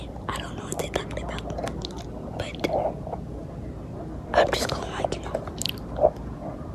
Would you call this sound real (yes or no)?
yes